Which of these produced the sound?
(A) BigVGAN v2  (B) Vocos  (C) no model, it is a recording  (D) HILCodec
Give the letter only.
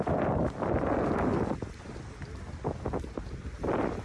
C